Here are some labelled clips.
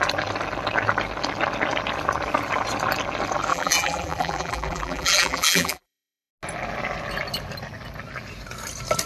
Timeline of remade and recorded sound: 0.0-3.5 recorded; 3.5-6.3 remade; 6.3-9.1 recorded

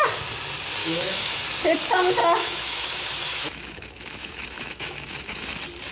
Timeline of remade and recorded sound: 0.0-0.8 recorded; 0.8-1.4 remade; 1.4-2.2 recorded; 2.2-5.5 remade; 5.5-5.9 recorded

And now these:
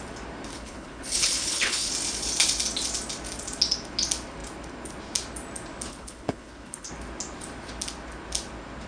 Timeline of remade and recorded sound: 0.0-0.5 recorded; 0.5-1.9 remade; 1.9-5.9 recorded; 5.9-6.9 remade; 6.9-8.9 recorded

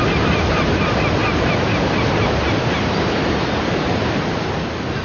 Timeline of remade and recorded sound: 0.0-5.0 recorded

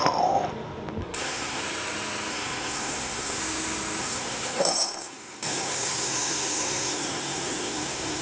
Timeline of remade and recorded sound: 0.0-1.0 recorded; 1.0-1.6 remade; 1.6-2.3 recorded; 2.3-3.4 remade; 3.4-4.0 recorded; 4.0-8.2 remade

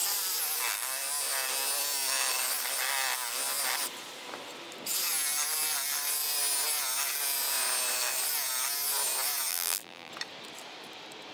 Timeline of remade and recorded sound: 0.0-9.5 recorded; 9.5-10.1 remade; 10.1-11.3 recorded

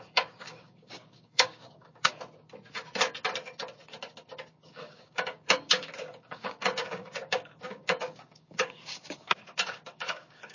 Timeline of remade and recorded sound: 0.0-2.1 remade; 2.1-4.5 recorded; 4.5-10.5 remade